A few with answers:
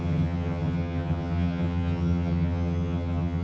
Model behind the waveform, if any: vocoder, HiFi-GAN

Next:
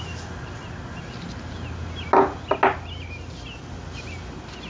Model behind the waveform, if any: none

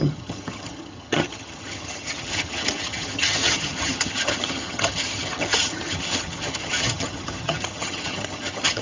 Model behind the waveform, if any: vocoder, HiFi-GAN